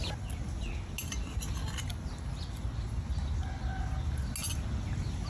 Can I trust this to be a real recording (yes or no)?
yes